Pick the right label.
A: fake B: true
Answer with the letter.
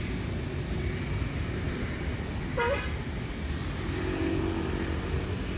B